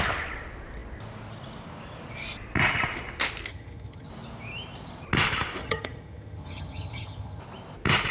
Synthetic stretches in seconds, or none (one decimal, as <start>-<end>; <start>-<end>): 3.5-4.1; 5.6-7.4